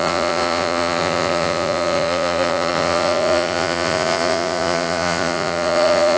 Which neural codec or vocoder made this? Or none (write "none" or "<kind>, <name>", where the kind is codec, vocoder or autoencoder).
vocoder, Vocos